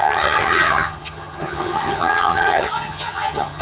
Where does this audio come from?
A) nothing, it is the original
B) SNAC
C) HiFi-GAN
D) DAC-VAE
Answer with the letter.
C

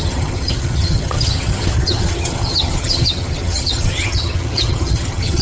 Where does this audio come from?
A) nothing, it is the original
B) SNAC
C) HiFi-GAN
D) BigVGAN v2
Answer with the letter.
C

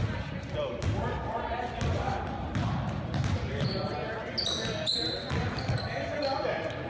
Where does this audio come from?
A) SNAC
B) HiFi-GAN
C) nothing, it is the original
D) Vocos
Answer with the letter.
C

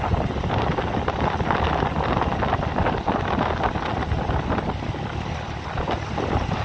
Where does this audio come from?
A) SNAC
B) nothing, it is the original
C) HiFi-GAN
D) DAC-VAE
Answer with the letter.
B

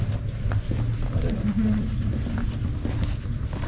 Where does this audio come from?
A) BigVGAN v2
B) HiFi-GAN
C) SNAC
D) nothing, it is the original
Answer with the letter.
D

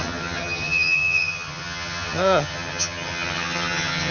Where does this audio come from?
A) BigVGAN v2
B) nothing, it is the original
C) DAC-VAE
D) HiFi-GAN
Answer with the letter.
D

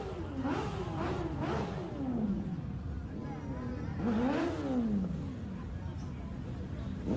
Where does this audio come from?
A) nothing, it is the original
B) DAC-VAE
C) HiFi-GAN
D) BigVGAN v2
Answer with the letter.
A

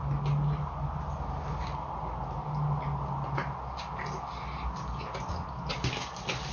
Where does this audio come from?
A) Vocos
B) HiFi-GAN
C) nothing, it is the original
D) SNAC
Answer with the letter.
C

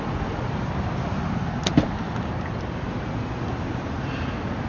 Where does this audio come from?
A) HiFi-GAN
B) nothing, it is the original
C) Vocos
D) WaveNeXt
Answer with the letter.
B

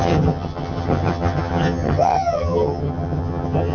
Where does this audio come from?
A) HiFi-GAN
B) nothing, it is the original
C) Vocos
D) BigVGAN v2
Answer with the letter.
A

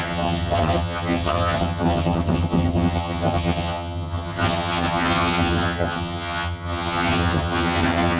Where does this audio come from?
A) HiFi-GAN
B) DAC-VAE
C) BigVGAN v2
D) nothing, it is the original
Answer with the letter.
A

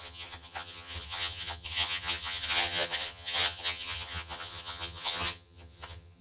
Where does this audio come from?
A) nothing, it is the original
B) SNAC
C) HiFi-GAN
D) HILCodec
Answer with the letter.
C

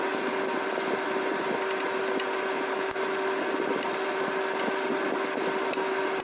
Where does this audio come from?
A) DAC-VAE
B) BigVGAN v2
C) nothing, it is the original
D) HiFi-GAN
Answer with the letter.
C